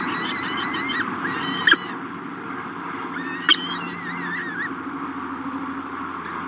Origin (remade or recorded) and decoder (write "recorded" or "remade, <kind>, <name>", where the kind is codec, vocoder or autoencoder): recorded